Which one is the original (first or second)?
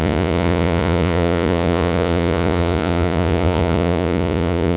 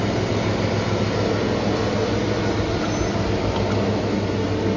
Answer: second